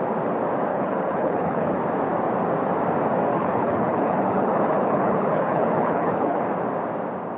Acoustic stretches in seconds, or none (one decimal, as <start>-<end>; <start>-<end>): 0.0-0.7; 1.8-3.3; 6.4-7.4